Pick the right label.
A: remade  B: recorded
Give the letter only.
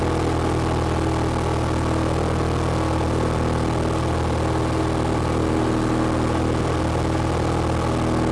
B